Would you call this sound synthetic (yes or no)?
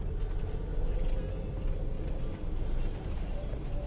no